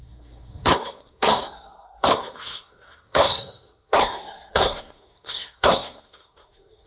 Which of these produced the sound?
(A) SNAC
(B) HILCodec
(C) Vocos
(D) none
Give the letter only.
A